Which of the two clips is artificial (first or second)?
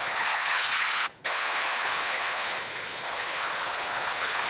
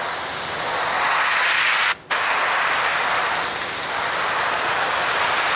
first